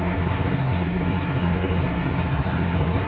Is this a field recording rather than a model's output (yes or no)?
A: no